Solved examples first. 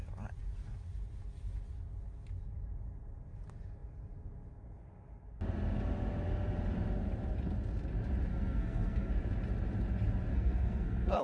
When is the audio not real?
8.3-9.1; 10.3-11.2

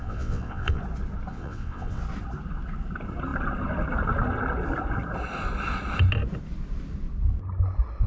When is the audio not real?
0.0-0.8; 1.3-2.0